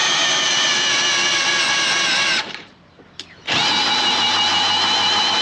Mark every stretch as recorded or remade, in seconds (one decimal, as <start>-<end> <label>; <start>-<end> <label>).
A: 0.0-5.4 recorded